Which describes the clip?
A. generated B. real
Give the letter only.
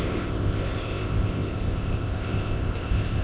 A